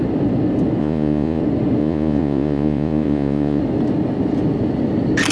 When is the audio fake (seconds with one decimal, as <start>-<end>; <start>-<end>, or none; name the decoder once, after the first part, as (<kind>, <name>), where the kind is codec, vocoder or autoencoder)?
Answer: 0.8-1.4 (vocoder, Vocos); 1.8-3.6